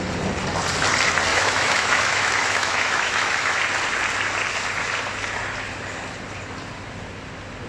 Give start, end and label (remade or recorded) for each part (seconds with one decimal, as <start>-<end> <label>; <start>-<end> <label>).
0.0-1.3 recorded; 1.3-3.6 remade; 3.6-7.7 recorded

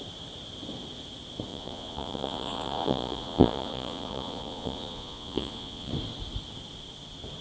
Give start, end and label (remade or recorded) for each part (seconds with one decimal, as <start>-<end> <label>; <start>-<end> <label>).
0.0-1.5 recorded; 1.5-5.9 remade; 5.9-7.4 recorded